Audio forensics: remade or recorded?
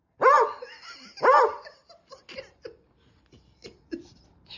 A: recorded